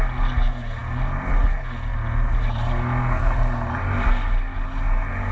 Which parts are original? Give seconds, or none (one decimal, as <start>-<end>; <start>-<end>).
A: 0.0-5.3